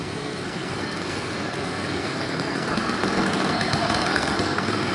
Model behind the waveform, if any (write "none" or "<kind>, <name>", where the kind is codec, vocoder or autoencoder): codec, SNAC